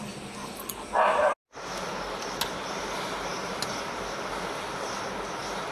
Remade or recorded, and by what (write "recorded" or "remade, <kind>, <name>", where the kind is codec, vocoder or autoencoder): recorded